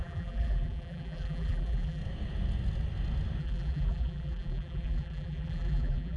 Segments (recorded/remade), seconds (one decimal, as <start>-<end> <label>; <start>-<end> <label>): 0.0-2.0 remade; 2.0-3.4 recorded; 3.4-6.2 remade